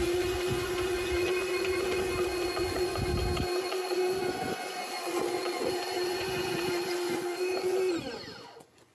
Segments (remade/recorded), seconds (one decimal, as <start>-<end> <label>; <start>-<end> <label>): 0.0-3.1 remade; 3.1-3.6 recorded; 3.6-8.9 remade